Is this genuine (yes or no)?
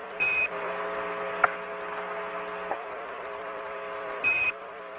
yes